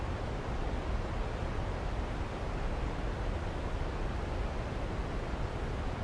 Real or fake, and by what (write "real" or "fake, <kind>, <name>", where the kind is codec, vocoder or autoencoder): real